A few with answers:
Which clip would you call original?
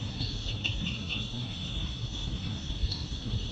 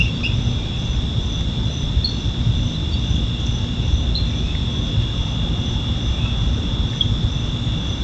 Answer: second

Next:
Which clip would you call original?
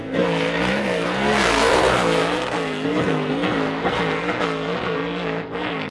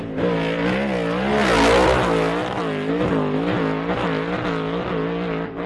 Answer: second